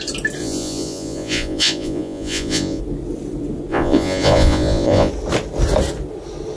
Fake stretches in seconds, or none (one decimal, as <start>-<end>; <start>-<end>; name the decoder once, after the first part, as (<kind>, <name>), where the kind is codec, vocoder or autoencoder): 0.4-2.8 (vocoder, Vocos); 3.7-5.1